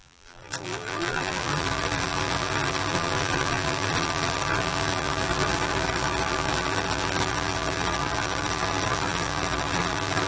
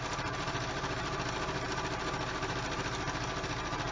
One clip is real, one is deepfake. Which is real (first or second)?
second